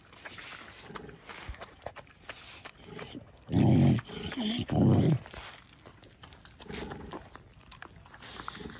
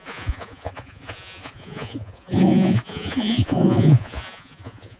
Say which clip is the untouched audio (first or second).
first